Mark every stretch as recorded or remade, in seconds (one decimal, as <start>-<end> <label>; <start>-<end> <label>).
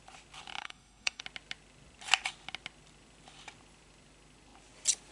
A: 0.0-0.6 recorded; 0.6-1.2 remade; 1.2-5.1 recorded